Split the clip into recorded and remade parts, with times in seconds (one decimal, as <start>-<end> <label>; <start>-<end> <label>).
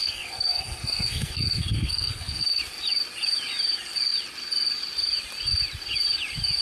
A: 0.0-2.6 remade; 2.6-6.6 recorded